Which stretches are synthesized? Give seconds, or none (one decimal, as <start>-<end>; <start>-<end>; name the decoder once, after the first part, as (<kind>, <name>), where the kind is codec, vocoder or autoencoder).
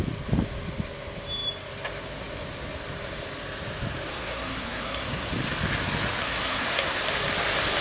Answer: 4.1-5.3 (codec, SNAC); 6.2-7.0